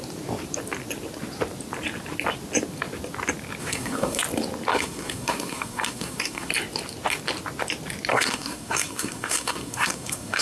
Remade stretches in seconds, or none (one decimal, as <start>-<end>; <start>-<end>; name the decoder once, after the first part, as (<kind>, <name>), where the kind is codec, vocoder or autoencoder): 3.6-4.2 (codec, SNAC); 4.7-6.5; 8.1-10.4